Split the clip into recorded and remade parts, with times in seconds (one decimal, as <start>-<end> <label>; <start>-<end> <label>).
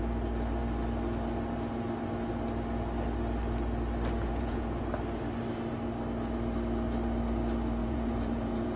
0.0-4.3 recorded; 4.3-4.8 remade; 4.8-7.8 recorded; 7.8-8.8 remade